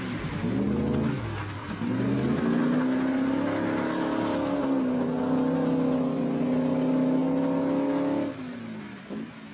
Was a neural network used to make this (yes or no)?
no